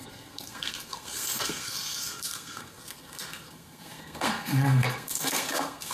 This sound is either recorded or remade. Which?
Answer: remade